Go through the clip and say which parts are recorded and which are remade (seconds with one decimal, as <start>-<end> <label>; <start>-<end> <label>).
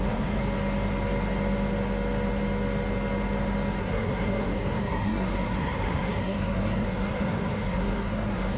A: 0.0-0.4 remade; 0.4-3.8 recorded; 3.8-8.6 remade